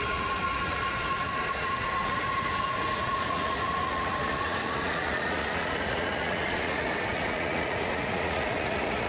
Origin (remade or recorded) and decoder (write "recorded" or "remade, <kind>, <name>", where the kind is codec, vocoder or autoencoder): remade, vocoder, Vocos